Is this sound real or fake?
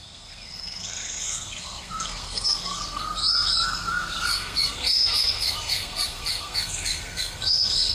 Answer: fake